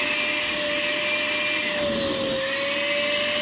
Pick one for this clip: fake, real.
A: real